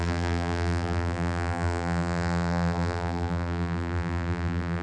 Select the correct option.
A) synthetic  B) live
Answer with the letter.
A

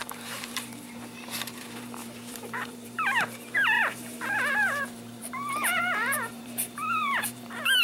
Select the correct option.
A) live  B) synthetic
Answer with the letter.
B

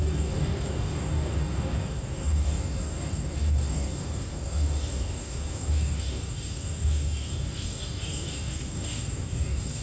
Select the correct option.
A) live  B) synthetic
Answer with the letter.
B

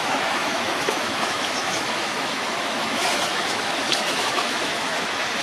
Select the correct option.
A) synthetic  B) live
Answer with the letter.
A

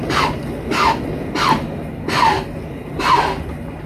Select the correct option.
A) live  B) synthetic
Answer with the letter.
A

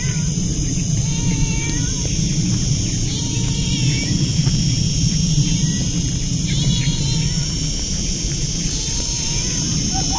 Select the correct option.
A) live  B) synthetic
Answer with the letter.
B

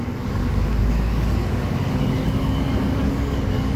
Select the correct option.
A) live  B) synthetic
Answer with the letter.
B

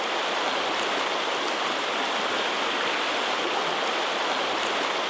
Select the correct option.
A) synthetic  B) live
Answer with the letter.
B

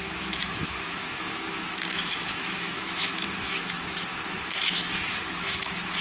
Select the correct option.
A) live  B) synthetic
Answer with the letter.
B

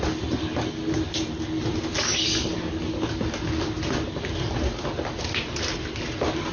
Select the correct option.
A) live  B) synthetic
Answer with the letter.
A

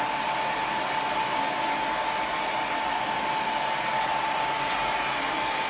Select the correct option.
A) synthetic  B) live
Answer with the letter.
B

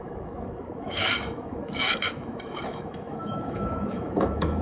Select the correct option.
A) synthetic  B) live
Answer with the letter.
A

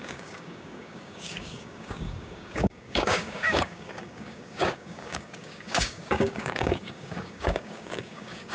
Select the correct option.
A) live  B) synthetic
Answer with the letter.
B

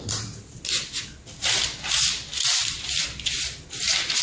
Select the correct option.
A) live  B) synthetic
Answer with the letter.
A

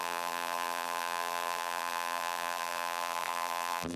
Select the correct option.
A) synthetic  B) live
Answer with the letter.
A